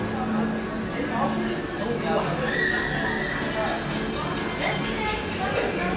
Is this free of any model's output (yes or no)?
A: yes